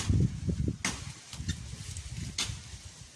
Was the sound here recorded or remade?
recorded